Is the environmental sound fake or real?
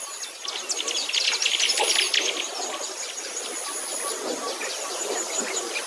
real